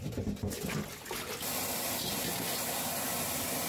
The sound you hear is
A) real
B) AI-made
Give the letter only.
A